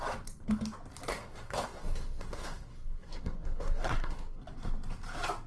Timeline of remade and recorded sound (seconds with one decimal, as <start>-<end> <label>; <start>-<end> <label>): 0.0-1.1 recorded; 1.1-4.4 remade; 4.4-5.5 recorded